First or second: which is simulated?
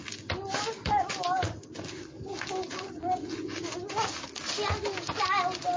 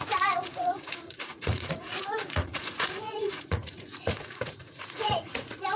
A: second